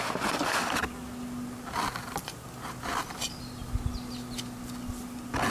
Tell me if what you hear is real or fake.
real